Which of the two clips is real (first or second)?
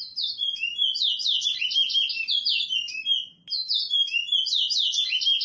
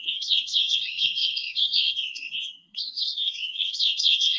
first